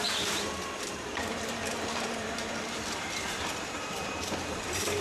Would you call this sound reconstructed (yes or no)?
yes